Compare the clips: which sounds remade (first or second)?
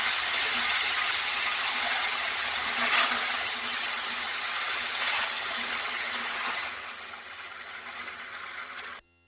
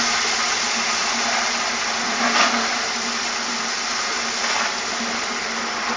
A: first